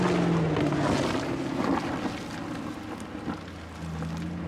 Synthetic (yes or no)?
no